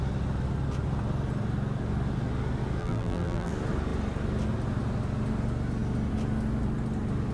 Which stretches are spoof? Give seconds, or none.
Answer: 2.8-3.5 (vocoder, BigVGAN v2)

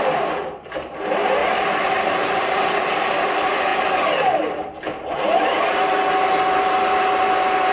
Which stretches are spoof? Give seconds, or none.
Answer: none

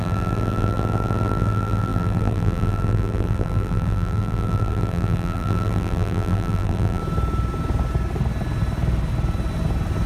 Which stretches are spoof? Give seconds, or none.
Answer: 0.0-7.0 (vocoder, BigVGAN v2)

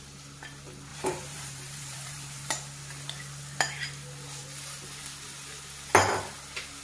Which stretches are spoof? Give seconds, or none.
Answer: 0.9-2.5 (vocoder, BigVGAN v2)

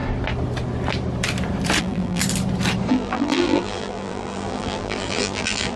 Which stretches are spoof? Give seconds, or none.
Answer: 1.8-2.2 (vocoder, BigVGAN v2); 2.9-5.8